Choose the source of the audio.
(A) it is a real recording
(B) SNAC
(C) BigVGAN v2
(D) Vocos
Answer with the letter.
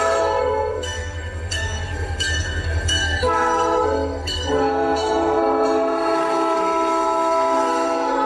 B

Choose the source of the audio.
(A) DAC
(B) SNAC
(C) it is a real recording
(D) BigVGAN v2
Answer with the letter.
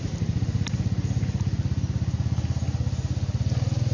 C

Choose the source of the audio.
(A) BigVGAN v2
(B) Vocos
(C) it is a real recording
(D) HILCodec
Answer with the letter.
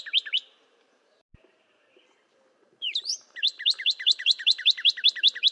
A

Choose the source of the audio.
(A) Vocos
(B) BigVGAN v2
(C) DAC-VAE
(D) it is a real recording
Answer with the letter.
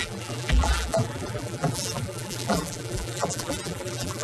B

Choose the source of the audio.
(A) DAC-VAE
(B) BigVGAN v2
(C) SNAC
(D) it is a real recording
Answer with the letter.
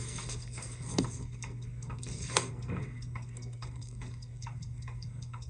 C